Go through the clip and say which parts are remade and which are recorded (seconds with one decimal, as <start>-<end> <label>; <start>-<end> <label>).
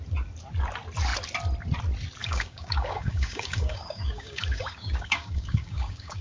0.0-2.2 recorded; 2.2-6.2 remade